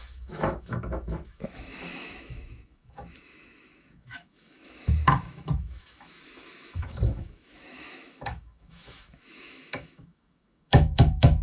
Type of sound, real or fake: fake